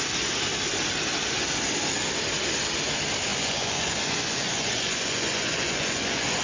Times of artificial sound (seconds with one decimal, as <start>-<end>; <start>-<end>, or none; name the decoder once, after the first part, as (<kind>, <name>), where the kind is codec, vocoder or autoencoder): 3.3-6.4 (vocoder, Vocos)